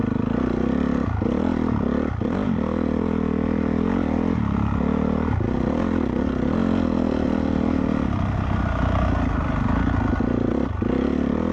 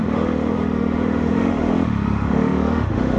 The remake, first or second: second